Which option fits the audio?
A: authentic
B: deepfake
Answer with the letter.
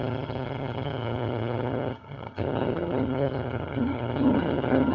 B